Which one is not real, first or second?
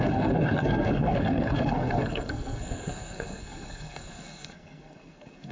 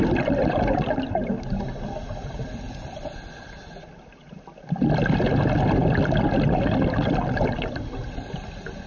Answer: first